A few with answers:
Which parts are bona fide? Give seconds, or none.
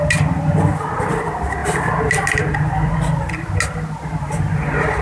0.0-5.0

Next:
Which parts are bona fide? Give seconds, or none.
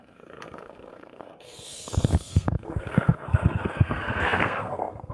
none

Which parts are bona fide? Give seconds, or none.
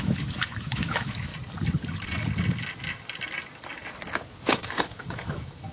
1.3-4.4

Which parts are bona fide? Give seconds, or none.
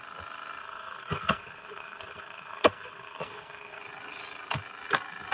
0.0-0.6; 3.8-5.3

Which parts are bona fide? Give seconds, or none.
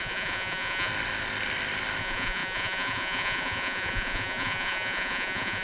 0.9-2.0